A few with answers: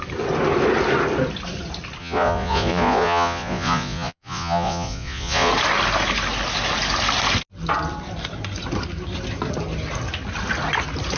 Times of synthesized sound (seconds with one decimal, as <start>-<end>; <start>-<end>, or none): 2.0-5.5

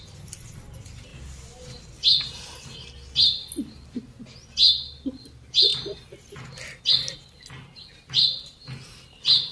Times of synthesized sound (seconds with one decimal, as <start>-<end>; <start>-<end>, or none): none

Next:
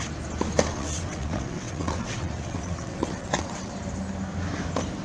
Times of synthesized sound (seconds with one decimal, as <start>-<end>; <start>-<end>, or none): 0.7-3.7

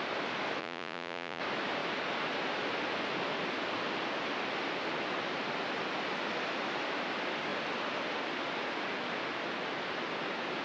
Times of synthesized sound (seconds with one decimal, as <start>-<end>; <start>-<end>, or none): 0.6-1.4